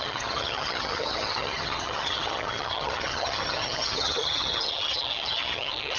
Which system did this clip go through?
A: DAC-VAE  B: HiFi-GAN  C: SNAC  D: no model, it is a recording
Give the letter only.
B